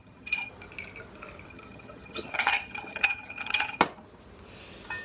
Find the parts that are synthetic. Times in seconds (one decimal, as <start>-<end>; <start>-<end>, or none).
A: 0.0-0.5; 1.5-3.8